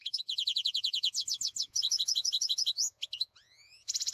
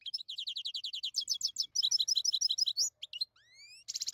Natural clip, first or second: second